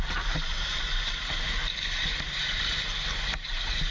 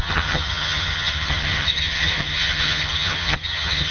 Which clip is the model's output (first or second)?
second